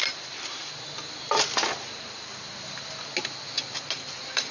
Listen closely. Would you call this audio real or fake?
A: real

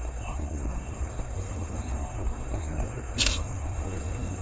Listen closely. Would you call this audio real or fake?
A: fake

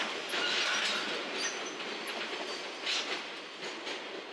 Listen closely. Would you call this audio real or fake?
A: real